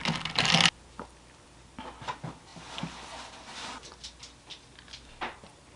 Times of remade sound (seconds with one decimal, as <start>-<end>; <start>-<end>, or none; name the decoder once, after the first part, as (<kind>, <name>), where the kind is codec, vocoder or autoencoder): none